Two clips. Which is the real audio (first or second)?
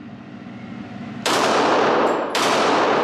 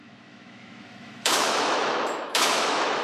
first